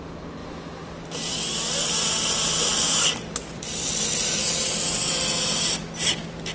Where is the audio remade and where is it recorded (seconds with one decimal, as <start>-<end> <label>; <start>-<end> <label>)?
0.0-6.5 recorded